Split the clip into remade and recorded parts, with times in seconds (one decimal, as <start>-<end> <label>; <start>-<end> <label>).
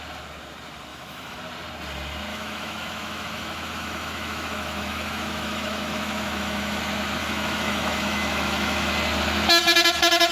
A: 0.0-0.9 recorded; 0.9-1.4 remade; 1.4-2.3 recorded; 2.3-6.8 remade; 6.8-7.2 recorded; 7.2-8.9 remade; 8.9-10.3 recorded